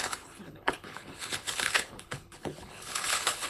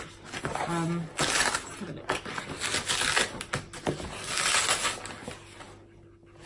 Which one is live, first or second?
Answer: second